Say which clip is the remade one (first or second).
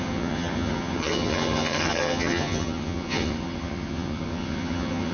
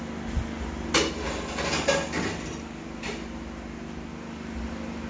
first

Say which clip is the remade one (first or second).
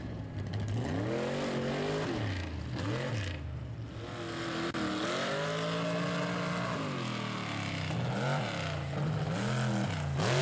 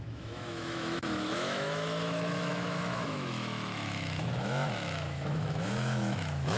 second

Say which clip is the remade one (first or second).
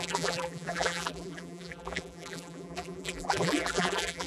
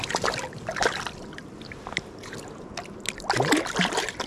first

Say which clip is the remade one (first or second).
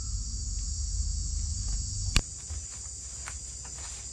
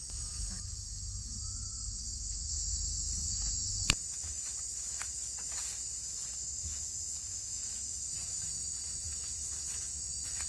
second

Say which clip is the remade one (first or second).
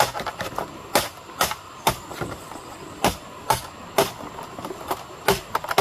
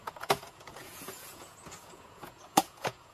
second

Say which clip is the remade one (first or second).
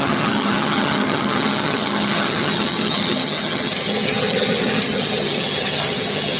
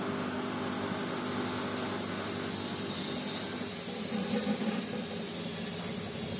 first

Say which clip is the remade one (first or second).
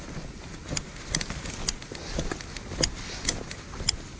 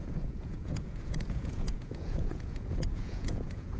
second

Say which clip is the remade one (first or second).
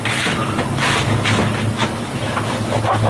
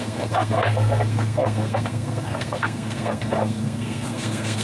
second